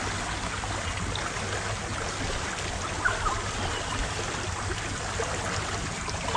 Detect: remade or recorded recorded